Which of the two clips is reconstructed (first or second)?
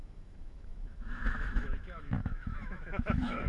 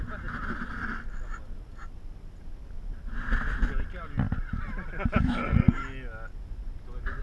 first